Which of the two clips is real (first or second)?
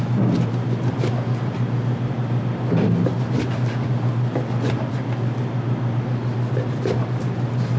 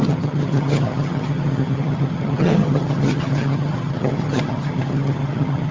first